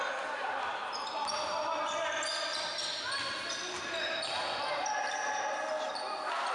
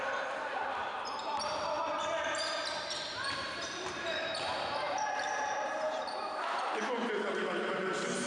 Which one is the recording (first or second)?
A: first